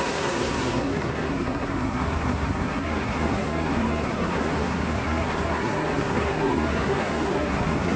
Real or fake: fake